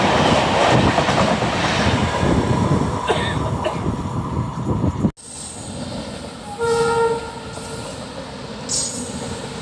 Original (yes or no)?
yes